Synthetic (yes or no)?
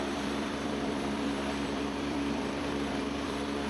yes